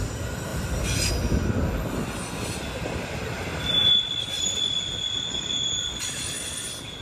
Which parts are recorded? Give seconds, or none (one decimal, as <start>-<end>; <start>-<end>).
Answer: 0.0-0.5; 1.1-3.5; 6.4-7.0